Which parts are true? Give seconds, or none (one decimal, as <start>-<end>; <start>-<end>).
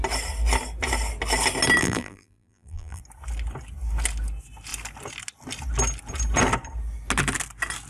0.0-1.8; 3.0-7.9